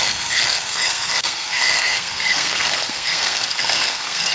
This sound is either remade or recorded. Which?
remade